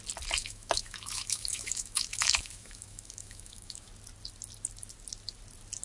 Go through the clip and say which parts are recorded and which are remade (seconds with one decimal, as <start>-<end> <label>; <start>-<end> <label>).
0.0-0.4 recorded; 0.4-3.9 remade; 3.9-5.8 recorded

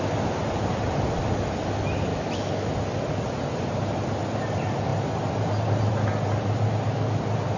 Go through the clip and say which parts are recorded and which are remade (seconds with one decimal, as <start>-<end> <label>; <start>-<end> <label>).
0.0-2.1 recorded; 2.1-2.7 remade; 2.7-7.6 recorded

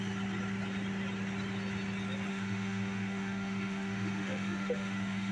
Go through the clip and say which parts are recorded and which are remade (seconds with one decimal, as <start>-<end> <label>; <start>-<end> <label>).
0.0-2.3 recorded; 2.3-5.3 remade

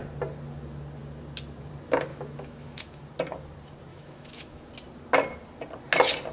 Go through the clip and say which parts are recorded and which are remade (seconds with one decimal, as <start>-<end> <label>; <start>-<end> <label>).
0.0-2.1 recorded; 2.1-3.0 remade; 3.0-3.9 recorded; 3.9-4.7 remade; 4.7-6.3 recorded

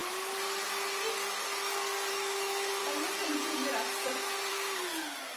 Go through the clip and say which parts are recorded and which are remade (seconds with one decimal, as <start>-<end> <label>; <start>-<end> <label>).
0.0-2.1 recorded; 2.1-2.8 remade; 2.8-4.5 recorded; 4.5-5.4 remade

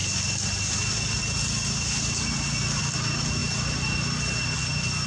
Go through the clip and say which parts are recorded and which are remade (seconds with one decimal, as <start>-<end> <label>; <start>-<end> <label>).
0.0-5.1 recorded